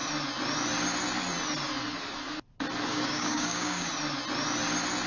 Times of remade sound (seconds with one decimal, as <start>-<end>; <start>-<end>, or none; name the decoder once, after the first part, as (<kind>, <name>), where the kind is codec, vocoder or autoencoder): 2.9-3.9 (codec, DAC)